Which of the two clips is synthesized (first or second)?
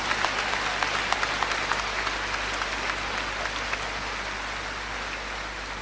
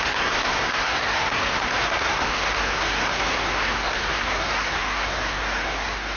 second